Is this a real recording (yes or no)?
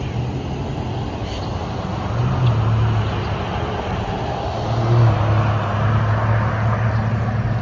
yes